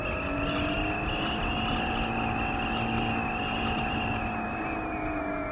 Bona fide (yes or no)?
yes